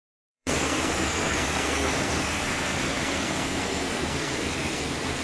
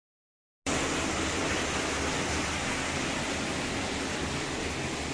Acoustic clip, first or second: second